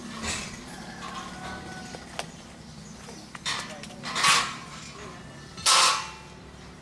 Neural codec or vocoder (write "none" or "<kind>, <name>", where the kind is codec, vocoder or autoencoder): none